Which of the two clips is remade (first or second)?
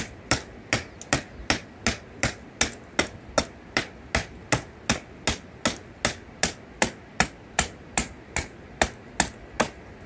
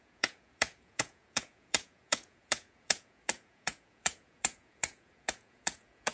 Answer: second